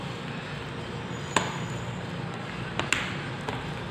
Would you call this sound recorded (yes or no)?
yes